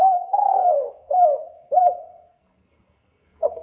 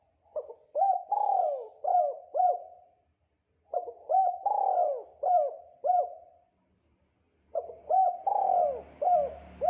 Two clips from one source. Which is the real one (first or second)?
second